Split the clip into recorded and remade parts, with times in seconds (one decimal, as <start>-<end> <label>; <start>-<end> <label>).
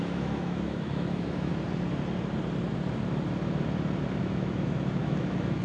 0.0-1.5 remade; 1.5-4.2 recorded; 4.2-5.6 remade